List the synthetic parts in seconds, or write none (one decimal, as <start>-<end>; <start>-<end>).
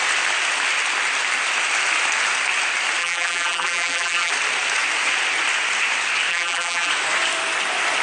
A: 3.0-4.3; 6.3-6.9